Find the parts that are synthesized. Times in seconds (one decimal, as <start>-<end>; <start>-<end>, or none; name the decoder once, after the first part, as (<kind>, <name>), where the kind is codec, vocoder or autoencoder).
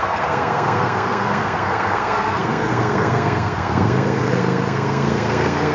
0.0-5.7 (codec, SNAC)